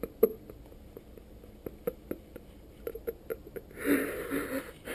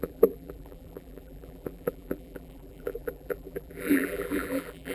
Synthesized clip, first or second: second